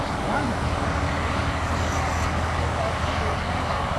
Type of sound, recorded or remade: remade